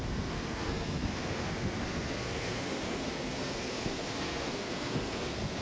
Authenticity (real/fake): fake